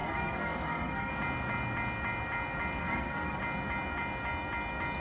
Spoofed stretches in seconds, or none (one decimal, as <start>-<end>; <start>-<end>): 0.0-1.1; 2.8-3.4